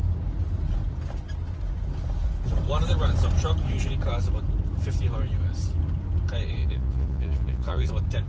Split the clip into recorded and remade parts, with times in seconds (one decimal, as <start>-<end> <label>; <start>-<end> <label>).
0.0-6.6 recorded; 6.6-7.9 remade; 7.9-8.3 recorded